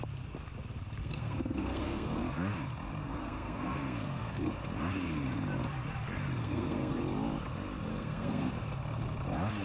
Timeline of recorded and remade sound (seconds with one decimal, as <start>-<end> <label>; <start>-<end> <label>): 0.0-1.0 recorded; 1.0-2.2 remade; 2.2-3.0 recorded; 3.0-4.4 remade; 4.4-6.3 recorded; 6.3-7.0 remade; 7.0-7.9 recorded; 7.9-8.5 remade; 8.5-9.6 recorded